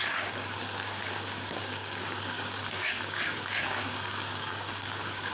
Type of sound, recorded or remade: remade